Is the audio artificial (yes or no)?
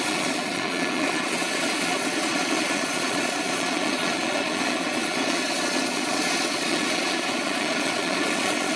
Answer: yes